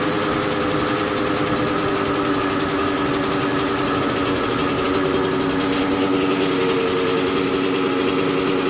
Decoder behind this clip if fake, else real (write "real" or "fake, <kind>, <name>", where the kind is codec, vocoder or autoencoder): real